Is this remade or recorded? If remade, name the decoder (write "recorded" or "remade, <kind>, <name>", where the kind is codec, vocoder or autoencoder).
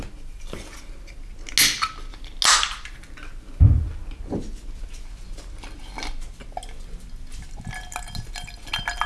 recorded